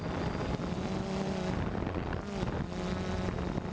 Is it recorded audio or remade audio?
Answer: recorded